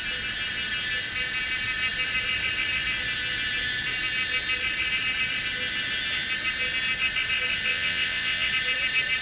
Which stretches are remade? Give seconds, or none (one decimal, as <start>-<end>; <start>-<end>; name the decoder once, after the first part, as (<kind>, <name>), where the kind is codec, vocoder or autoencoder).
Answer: 7.7-8.5 (vocoder, WaveNeXt)

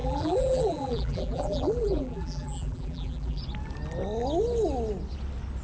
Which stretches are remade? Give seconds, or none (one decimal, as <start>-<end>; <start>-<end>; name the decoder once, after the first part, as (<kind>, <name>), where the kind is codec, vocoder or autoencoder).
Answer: 0.0-3.4 (vocoder, BigVGAN v2)

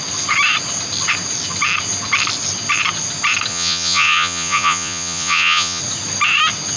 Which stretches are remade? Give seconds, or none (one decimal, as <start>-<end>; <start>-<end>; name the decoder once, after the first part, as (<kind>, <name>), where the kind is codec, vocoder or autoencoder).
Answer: 3.5-5.8 (vocoder, Vocos)

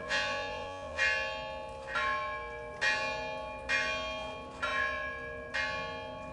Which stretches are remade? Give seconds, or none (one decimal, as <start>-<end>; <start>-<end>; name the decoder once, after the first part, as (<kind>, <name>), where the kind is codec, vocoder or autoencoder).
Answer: 0.0-1.0 (vocoder, Vocos)

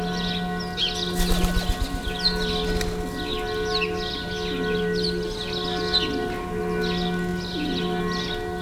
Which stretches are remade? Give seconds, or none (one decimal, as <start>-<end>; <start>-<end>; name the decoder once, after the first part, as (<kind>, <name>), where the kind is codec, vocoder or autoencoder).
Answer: none

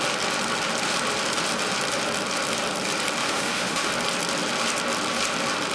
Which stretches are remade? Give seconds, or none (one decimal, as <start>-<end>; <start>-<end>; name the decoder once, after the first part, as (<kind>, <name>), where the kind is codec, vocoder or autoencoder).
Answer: 3.2-3.9 (autoencoder, DAC-VAE)